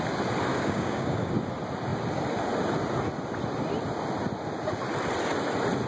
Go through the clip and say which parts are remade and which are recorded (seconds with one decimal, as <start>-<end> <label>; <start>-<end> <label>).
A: 0.0-0.5 recorded; 0.5-1.3 remade; 1.3-5.9 recorded